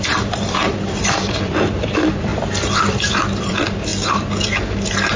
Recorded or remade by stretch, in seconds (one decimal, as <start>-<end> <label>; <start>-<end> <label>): 0.0-2.3 remade; 2.3-2.8 recorded; 2.8-3.9 remade; 3.9-5.2 recorded